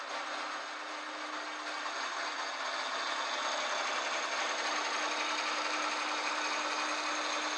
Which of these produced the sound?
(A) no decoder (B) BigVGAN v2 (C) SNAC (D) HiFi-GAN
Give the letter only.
A